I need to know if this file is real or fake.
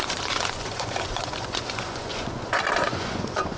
fake